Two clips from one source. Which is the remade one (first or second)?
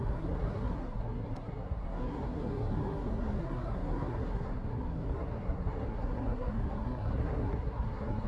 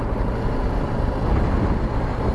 first